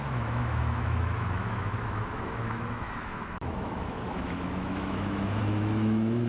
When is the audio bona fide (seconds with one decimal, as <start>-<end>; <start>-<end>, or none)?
none